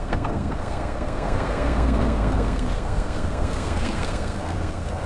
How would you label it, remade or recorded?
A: remade